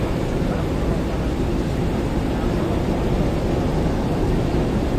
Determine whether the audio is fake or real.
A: real